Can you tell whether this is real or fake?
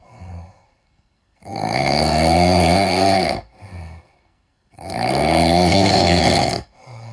fake